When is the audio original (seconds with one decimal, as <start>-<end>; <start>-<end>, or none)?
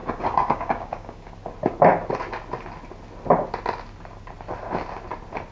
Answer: 1.3-5.5